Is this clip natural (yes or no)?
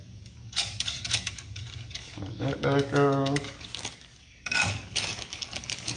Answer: no